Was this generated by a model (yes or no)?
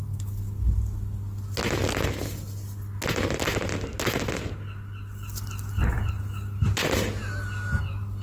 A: no